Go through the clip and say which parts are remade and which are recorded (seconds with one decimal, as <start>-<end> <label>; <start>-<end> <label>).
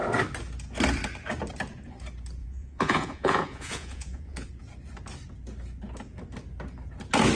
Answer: 0.0-2.4 recorded; 2.4-4.5 remade; 4.5-7.4 recorded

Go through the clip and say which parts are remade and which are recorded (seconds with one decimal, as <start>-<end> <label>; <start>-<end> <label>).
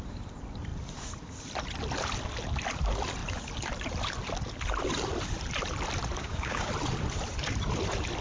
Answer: 0.0-6.2 recorded; 6.2-6.7 remade; 6.7-8.2 recorded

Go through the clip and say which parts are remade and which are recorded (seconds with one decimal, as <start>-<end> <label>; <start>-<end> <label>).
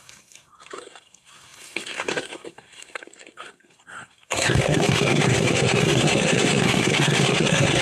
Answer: 0.0-7.8 remade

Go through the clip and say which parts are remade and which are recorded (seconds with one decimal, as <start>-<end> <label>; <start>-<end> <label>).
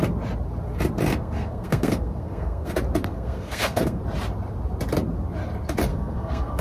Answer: 0.0-1.1 recorded; 1.1-2.7 remade; 2.7-3.1 recorded; 3.1-4.0 remade; 4.0-5.9 recorded; 5.9-6.6 remade